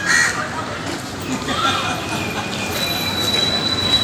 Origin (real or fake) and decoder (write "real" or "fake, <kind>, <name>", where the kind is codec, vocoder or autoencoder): real